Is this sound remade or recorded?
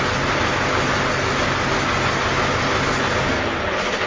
recorded